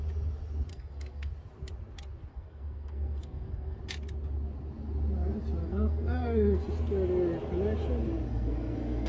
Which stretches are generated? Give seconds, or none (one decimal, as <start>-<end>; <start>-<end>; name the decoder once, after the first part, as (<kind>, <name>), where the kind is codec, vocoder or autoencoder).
0.7-1.3 (codec, SNAC); 2.3-3.8; 5.6-6.7; 8.3-9.1